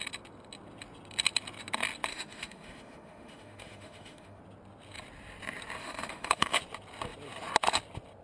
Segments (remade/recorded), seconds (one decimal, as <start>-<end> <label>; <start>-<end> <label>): 0.0-2.1 recorded; 2.1-4.4 remade; 4.4-5.8 recorded; 5.8-6.6 remade; 6.6-8.2 recorded